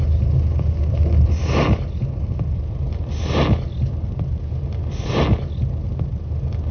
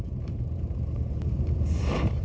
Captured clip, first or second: first